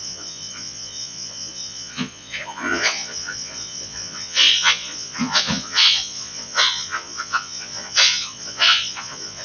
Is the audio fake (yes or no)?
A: yes